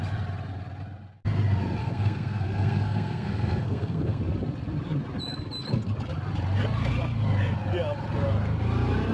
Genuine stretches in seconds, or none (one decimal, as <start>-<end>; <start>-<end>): 0.0-1.8; 4.2-9.1